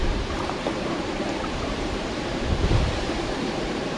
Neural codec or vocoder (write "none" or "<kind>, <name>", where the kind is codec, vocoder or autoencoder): vocoder, BigVGAN v2